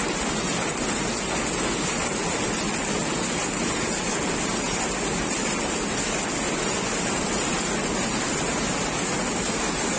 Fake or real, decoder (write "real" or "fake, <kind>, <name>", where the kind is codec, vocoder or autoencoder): real